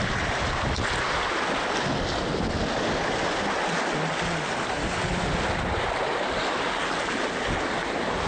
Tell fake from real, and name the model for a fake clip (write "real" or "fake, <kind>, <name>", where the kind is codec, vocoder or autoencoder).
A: real